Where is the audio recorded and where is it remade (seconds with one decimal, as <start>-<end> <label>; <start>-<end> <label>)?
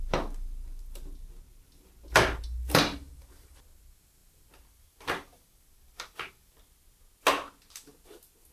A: 0.0-1.5 recorded; 1.5-2.4 remade; 2.4-4.2 recorded; 4.2-6.9 remade; 6.9-8.5 recorded